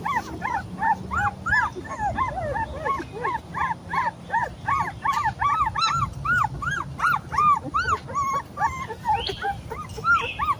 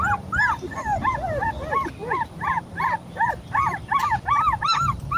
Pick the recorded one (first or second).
first